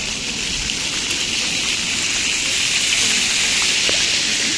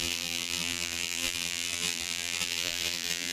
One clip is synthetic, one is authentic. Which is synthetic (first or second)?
second